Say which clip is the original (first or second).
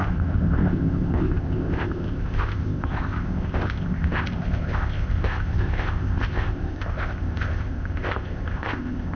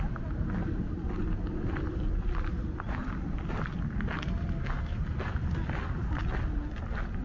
second